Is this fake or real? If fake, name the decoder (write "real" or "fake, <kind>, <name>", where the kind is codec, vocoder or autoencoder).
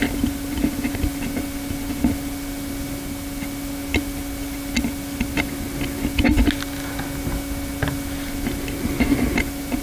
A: real